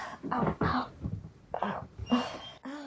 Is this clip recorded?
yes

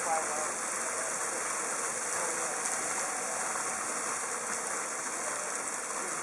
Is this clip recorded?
yes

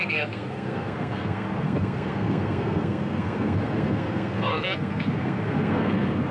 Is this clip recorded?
no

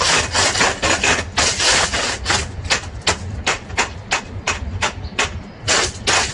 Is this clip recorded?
yes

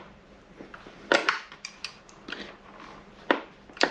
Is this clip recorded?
no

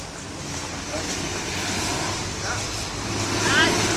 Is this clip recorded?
yes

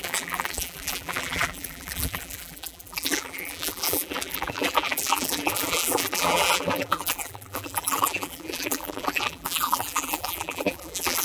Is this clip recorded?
no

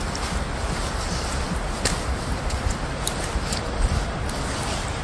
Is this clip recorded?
yes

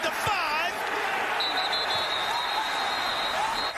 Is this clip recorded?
yes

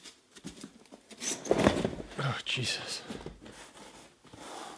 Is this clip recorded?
yes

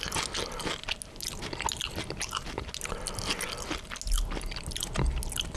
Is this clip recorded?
yes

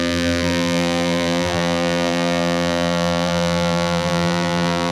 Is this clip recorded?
no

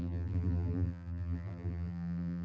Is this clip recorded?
no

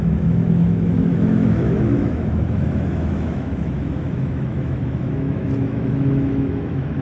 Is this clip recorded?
no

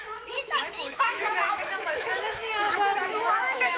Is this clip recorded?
no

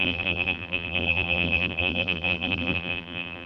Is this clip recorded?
no